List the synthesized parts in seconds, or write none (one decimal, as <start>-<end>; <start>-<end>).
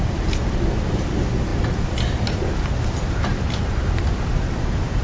none